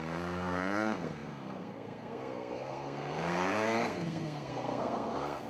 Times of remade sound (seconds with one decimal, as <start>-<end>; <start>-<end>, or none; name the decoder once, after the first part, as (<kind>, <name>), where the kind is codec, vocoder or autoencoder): 0.0-5.5 (codec, SNAC)